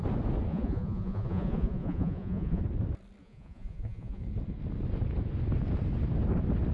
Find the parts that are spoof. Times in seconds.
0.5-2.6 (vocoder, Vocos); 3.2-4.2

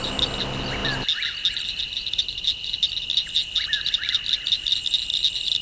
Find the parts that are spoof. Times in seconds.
none